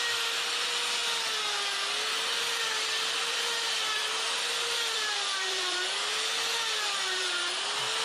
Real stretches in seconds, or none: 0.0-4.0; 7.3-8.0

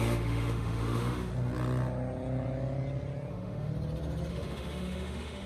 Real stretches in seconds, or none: 1.3-3.3; 3.7-4.3

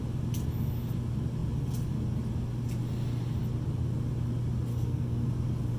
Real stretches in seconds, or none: 0.0-4.7; 5.3-5.8

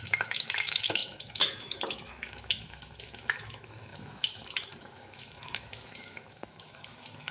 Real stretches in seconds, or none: none

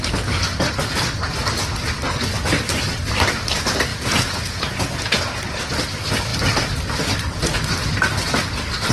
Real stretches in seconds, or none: 0.0-3.9; 5.2-8.9

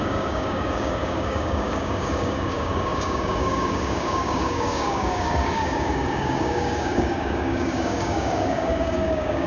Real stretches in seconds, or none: none

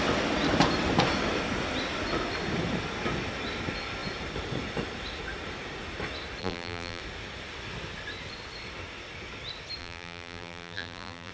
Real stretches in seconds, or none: 0.0-6.4; 7.0-9.8